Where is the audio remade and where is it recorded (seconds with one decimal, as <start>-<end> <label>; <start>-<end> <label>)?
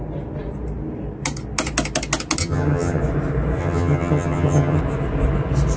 0.0-2.4 recorded; 2.4-3.0 remade; 3.0-3.6 recorded; 3.6-4.8 remade; 4.8-5.8 recorded